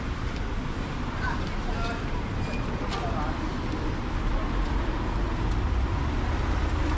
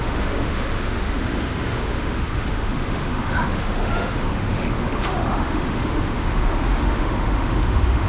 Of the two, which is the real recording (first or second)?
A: first